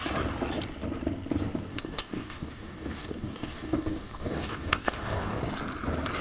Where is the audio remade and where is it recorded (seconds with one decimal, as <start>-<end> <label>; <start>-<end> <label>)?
0.0-1.7 recorded; 1.7-5.4 remade; 5.4-6.2 recorded